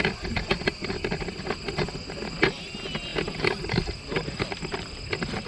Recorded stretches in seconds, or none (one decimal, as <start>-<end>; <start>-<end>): 0.0-5.5